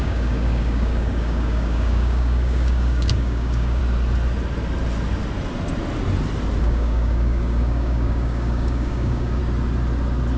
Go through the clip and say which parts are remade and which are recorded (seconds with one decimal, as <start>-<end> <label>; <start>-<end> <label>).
0.0-3.8 remade; 3.8-6.6 recorded; 6.6-9.4 remade; 9.4-10.4 recorded